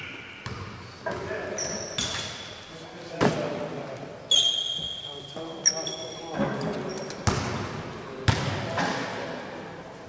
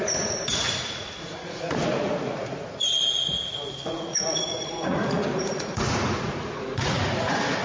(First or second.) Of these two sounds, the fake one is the second